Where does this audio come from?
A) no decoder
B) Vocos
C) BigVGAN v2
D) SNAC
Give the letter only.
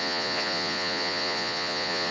B